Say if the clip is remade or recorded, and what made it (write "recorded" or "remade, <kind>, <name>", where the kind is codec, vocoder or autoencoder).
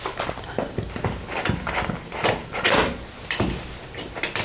recorded